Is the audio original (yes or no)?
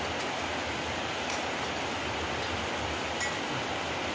yes